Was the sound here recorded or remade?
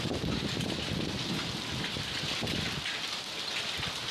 recorded